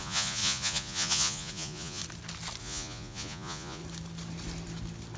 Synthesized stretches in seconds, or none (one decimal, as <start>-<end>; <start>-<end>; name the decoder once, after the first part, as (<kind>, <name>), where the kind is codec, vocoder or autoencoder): 0.0-2.0 (vocoder, Vocos); 2.6-3.8